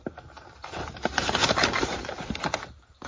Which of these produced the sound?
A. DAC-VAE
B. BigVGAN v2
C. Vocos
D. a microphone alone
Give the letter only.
B